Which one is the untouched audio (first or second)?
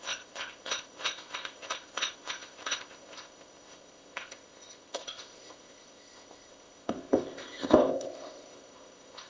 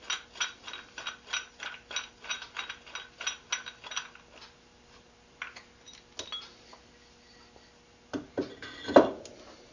second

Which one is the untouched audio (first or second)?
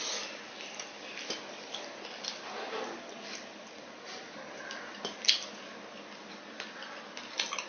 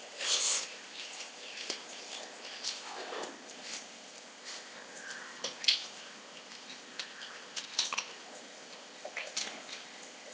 first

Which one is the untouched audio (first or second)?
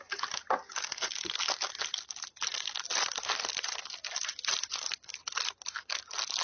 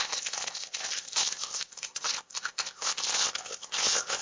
first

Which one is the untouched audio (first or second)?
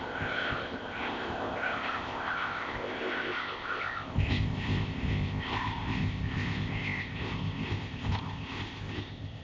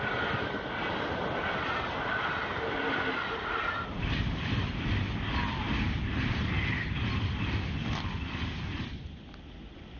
second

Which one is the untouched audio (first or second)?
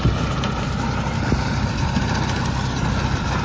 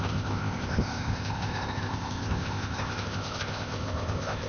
first